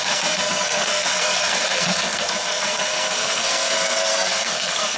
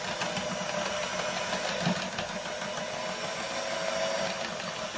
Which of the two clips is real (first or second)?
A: second